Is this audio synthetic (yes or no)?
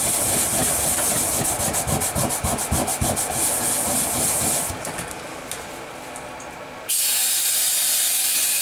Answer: no